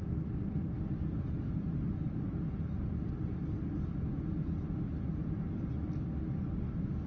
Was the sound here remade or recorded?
recorded